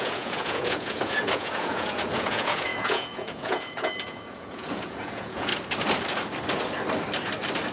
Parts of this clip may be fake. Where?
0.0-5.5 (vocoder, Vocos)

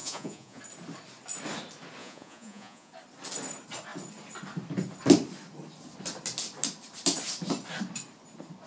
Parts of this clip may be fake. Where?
0.0-0.6 (vocoder, Vocos); 2.0-2.9

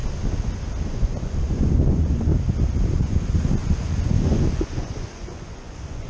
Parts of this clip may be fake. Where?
0.9-2.3 (vocoder, Vocos); 2.9-6.1

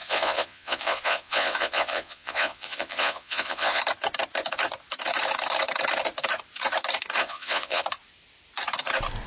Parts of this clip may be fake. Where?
0.0-3.8 (vocoder, Vocos); 7.2-7.8

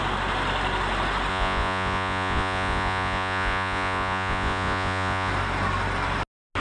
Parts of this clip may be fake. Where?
1.3-5.3 (vocoder, Vocos)

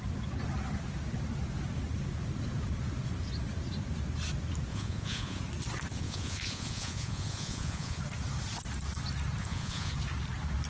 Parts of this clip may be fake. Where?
4.7-5.4 (vocoder, Vocos); 5.9-8.0; 9.4-9.9